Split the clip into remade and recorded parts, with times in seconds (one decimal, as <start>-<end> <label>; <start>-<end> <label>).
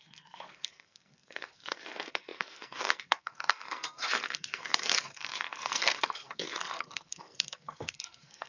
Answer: 0.0-8.5 remade